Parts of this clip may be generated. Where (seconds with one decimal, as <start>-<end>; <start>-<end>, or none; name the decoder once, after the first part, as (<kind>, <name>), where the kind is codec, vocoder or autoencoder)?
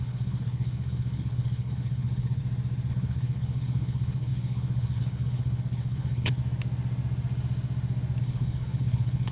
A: 0.0-2.4 (codec, HILCodec); 2.9-6.4; 8.2-9.3